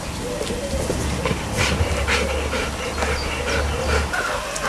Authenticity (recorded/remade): recorded